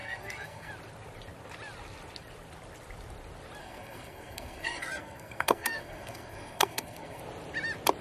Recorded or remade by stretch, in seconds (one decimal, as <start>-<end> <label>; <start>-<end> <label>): 0.0-0.7 remade; 0.7-3.6 recorded; 3.6-7.2 remade; 7.2-8.0 recorded